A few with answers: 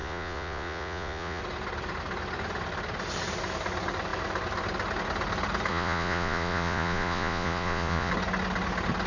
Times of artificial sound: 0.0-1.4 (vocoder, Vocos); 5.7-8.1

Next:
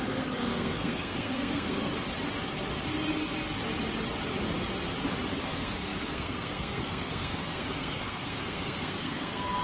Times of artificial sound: 0.0-1.9 (codec, SNAC); 5.4-9.6

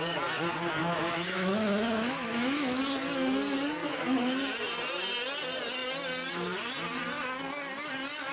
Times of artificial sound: 0.8-2.8 (autoencoder, DAC-VAE); 3.8-4.4